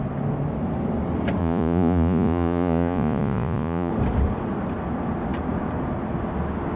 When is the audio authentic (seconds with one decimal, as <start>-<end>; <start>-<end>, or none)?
0.0-1.4; 3.9-6.8